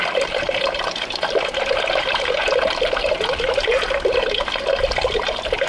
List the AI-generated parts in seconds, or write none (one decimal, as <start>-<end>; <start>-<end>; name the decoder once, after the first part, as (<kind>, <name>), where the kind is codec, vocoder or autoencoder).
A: 0.0-5.7 (vocoder, BigVGAN v2)